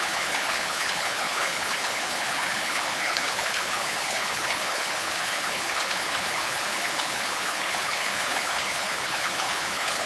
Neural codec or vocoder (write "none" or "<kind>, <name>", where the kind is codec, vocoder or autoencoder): codec, HILCodec